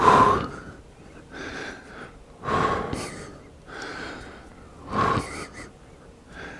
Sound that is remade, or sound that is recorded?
recorded